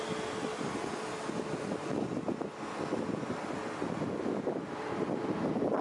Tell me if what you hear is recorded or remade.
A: recorded